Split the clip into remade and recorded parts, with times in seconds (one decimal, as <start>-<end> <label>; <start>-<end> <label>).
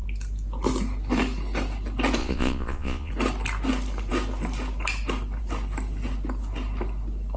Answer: 0.0-2.2 recorded; 2.2-3.1 remade; 3.1-7.4 recorded